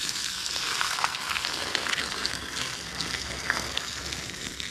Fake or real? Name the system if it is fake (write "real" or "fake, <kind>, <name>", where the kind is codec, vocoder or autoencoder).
fake, codec, SNAC